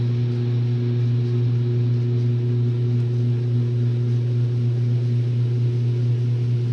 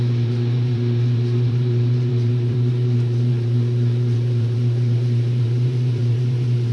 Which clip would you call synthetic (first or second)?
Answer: second